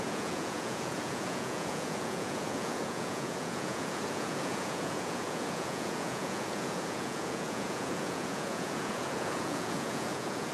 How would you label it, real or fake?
fake